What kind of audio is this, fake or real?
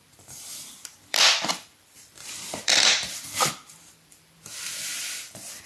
fake